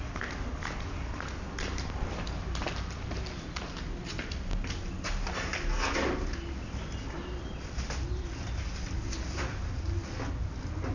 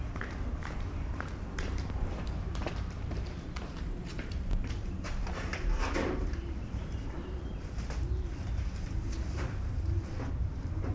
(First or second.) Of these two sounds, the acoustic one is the first